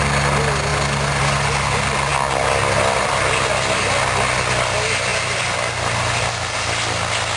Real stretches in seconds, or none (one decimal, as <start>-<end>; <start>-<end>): 0.0-0.7; 1.2-7.4